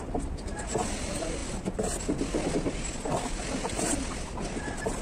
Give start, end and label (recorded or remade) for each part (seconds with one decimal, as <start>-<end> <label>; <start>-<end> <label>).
0.0-5.0 recorded

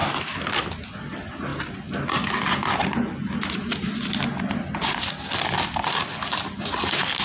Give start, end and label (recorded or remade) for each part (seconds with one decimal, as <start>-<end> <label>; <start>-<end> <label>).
0.0-7.2 recorded

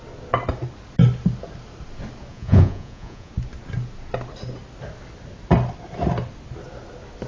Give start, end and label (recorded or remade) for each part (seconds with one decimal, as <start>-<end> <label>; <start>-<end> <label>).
0.0-2.3 recorded; 2.3-3.3 remade; 3.3-7.3 recorded